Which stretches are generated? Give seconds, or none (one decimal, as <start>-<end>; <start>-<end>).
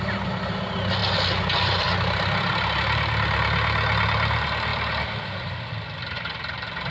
none